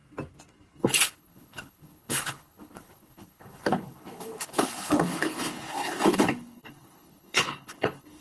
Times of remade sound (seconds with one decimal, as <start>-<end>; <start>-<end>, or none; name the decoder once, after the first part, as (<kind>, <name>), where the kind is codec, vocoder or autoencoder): 0.8-8.2 (codec, HILCodec)